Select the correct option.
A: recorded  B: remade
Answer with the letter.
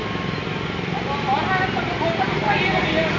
A